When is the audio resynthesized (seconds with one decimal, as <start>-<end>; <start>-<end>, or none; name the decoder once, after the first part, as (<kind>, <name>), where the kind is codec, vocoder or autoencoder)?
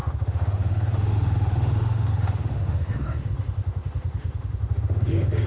0.0-5.5 (autoencoder, DAC-VAE)